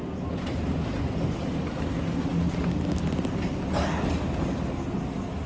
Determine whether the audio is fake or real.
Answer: real